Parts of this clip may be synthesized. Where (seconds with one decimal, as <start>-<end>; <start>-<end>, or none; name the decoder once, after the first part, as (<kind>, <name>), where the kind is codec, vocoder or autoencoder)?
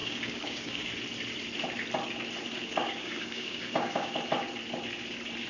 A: 0.0-0.9 (codec, DAC); 2.6-4.1